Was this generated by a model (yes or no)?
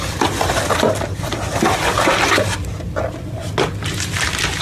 no